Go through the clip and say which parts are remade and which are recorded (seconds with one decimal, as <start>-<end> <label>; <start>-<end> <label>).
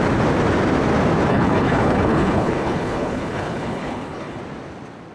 0.0-1.3 recorded; 1.3-4.4 remade; 4.4-5.1 recorded